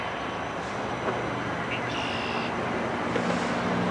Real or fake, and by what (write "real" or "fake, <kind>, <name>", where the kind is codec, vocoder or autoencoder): real